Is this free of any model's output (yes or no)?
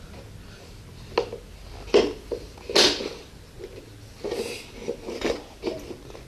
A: yes